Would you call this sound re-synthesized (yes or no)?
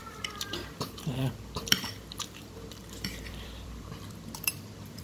yes